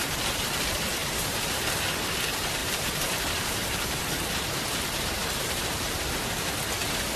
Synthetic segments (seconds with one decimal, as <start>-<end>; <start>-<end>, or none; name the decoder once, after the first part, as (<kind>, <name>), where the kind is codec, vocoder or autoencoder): 0.0-1.6 (vocoder, BigVGAN v2); 2.6-4.0; 5.2-6.1